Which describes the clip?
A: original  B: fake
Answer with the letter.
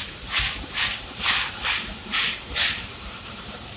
B